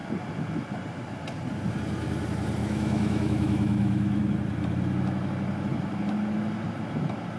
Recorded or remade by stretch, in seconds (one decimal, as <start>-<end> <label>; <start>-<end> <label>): 0.0-2.6 recorded; 2.6-4.2 remade; 4.2-7.4 recorded